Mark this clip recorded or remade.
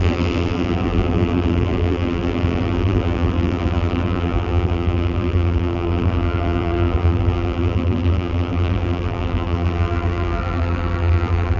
remade